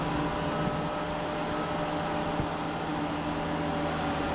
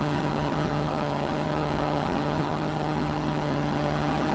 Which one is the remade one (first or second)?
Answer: second